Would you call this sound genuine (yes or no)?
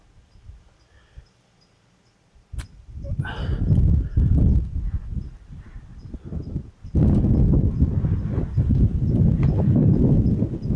yes